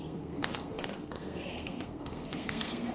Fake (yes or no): yes